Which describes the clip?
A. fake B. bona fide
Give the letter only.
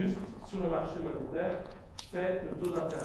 A